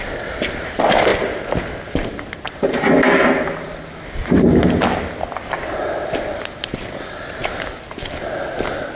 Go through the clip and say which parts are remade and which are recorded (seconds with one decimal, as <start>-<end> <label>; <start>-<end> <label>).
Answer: 0.0-9.0 recorded